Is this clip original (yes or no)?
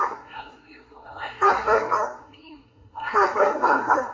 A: no